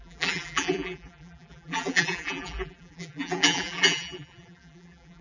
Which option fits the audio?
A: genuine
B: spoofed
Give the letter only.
B